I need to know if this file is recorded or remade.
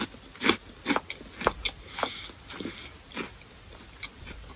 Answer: recorded